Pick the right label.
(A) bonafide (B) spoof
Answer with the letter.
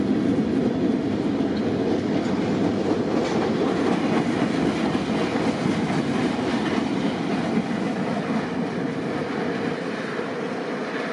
A